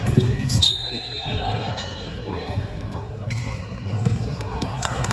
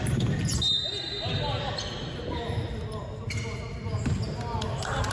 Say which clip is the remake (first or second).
first